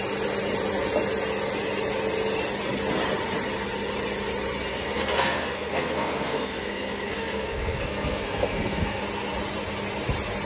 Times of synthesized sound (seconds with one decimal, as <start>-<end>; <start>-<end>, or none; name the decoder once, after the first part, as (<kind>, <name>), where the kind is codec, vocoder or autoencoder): 4.7-9.0 (codec, SNAC)